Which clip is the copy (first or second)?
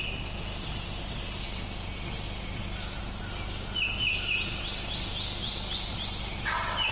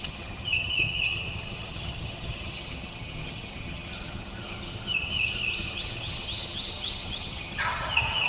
second